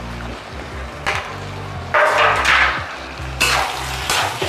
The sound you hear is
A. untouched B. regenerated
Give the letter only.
A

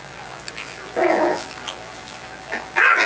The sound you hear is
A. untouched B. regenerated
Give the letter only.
B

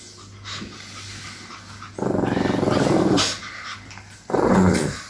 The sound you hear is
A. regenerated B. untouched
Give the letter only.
B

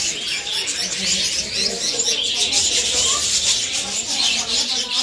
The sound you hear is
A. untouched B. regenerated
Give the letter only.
A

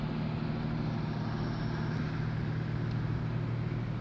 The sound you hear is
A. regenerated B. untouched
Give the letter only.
B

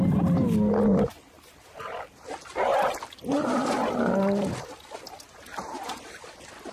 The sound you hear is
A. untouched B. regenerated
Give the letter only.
A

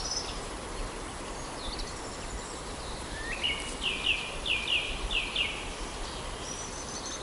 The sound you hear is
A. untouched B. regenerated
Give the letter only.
B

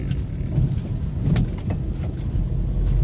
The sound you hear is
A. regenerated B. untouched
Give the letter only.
B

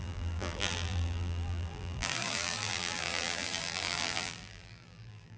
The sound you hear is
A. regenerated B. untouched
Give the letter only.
A